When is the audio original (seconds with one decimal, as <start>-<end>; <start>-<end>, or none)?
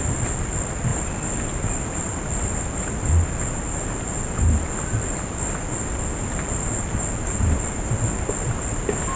0.0-9.2